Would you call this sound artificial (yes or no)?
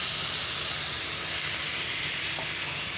no